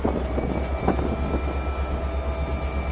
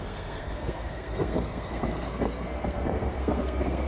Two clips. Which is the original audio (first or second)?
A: first